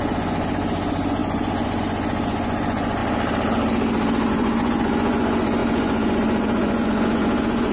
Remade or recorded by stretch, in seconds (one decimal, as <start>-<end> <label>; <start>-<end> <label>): 0.0-3.0 remade; 3.0-4.3 recorded; 4.3-7.7 remade